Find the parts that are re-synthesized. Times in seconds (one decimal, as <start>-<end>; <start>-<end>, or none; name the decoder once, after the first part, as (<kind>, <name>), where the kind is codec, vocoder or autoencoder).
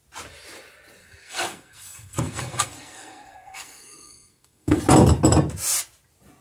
1.0-4.8 (codec, SNAC)